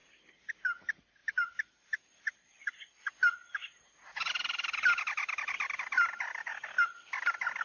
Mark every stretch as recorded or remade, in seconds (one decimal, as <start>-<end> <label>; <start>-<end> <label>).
0.0-7.6 recorded